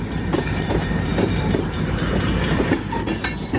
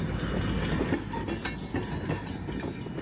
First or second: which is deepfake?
first